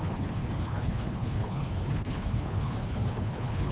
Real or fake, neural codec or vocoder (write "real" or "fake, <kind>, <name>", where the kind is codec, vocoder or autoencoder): fake, codec, HILCodec